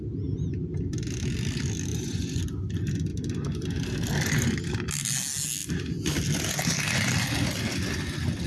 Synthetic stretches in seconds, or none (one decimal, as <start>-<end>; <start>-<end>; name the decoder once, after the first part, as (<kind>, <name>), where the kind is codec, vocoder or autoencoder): 1.9-2.4 (vocoder, Vocos)